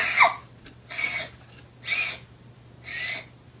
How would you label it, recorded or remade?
recorded